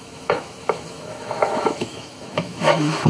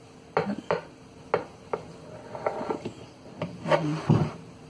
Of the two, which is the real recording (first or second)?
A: second